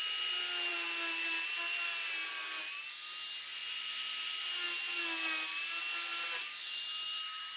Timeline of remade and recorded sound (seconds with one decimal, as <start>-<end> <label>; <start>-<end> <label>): 0.0-7.6 recorded